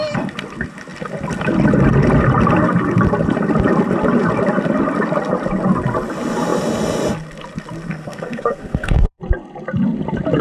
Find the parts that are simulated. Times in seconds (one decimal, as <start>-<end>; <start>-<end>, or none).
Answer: 7.9-9.2

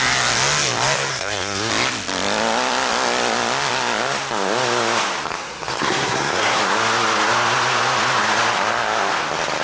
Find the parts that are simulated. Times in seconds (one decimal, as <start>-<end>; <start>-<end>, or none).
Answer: 1.1-1.7; 5.4-6.6

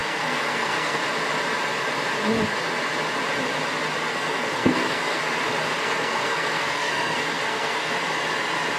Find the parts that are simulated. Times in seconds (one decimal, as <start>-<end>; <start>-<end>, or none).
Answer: 0.0-1.0; 4.1-5.2; 5.8-7.9

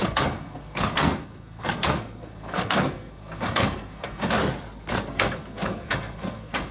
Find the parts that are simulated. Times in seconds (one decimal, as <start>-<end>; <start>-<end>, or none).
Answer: 0.0-4.4; 4.9-6.7

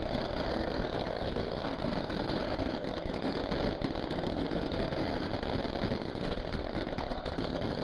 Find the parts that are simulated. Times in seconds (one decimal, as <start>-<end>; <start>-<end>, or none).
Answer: 0.0-3.4; 4.1-5.3; 6.0-7.8